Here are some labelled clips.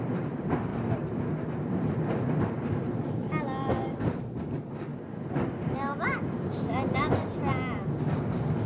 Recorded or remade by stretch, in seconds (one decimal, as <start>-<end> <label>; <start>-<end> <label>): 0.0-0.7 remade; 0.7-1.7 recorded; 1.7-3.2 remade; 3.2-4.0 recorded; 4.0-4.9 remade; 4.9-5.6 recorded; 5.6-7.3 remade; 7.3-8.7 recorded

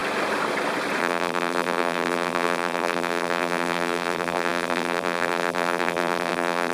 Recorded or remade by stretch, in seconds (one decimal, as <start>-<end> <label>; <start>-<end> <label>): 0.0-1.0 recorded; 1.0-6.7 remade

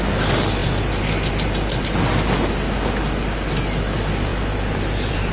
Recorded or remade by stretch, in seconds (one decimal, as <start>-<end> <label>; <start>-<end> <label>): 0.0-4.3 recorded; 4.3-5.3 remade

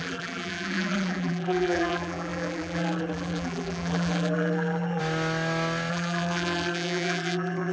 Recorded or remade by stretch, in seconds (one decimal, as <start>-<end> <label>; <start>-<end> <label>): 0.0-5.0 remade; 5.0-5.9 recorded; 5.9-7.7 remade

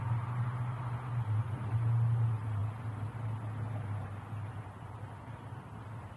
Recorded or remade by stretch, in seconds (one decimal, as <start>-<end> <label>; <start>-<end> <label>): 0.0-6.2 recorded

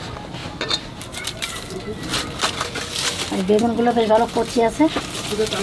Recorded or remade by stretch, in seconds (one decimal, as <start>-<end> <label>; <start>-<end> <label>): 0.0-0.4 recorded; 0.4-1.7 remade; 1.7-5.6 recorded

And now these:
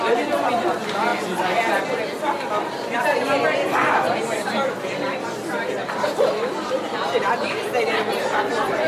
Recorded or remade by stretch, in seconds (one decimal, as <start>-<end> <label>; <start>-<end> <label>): 0.0-8.9 recorded